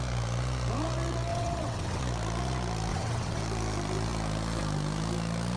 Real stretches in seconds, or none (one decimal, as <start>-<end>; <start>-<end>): 0.0-1.3; 2.0-2.9; 3.4-5.6